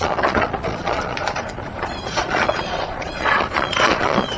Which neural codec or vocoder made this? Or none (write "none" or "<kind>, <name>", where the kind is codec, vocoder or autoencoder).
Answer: vocoder, Vocos